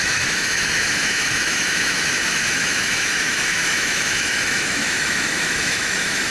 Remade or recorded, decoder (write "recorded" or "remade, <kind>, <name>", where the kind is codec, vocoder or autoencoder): remade, autoencoder, DAC-VAE